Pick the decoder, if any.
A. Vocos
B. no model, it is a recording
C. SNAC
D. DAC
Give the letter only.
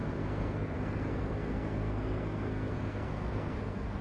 C